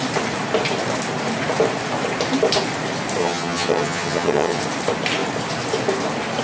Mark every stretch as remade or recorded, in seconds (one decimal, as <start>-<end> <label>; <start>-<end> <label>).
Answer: 0.0-3.2 recorded; 3.2-4.6 remade; 4.6-6.4 recorded